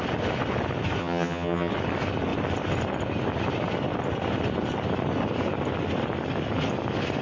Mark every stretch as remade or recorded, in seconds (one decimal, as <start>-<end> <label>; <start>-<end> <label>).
0.0-1.0 recorded; 1.0-1.7 remade; 1.7-7.2 recorded